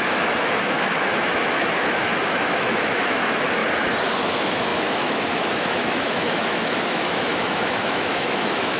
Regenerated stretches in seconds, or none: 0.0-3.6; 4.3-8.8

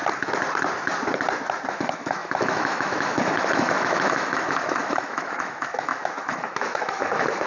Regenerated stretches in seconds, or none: 1.7-7.5

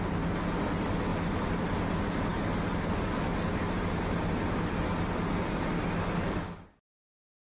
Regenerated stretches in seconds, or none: none

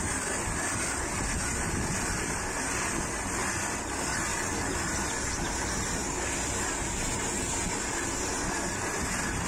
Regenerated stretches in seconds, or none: none

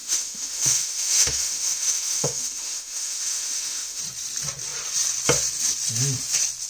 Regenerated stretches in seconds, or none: 0.0-4.0

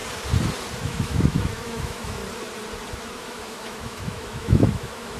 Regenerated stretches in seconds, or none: 0.8-2.2; 3.2-5.2

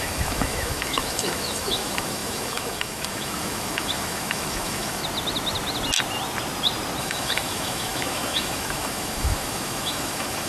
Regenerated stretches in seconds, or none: 0.0-5.0; 7.0-10.5

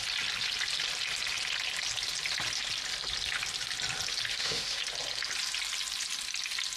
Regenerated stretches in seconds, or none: 4.3-4.8